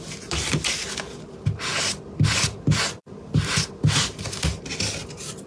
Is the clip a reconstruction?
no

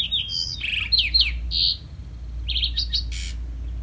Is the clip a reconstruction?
no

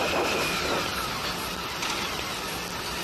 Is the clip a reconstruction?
no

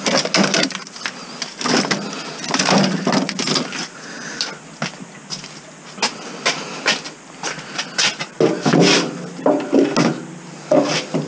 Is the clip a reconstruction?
no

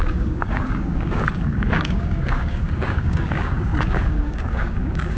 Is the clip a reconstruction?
yes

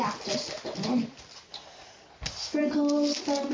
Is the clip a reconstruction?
no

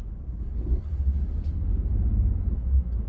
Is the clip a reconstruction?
no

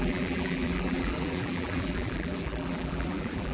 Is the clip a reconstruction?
yes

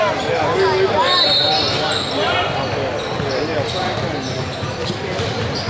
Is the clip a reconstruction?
no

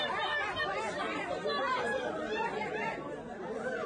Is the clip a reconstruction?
no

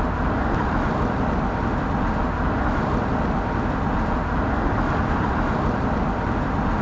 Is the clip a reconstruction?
no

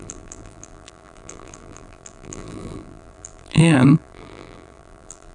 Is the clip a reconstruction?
yes